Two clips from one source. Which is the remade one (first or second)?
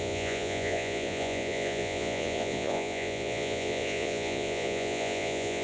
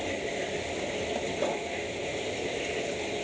first